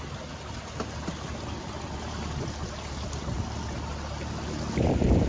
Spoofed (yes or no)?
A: no